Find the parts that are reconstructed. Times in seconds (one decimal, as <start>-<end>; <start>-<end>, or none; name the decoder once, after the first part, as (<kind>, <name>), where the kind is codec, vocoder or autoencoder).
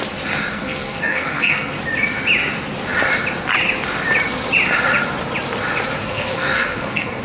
0.5-1.8 (codec, SNAC); 6.0-7.2